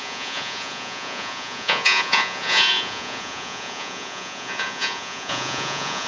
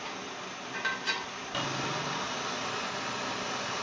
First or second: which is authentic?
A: second